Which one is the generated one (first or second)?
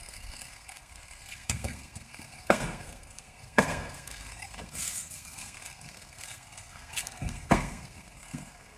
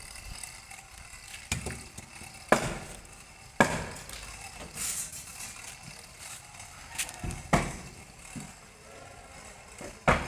first